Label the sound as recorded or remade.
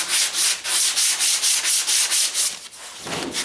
recorded